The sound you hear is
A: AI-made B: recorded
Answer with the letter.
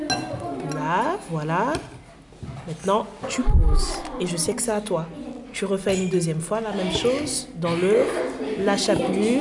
B